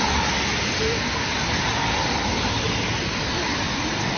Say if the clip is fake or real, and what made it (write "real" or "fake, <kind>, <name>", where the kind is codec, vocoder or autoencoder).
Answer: real